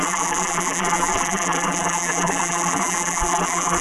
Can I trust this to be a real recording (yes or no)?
no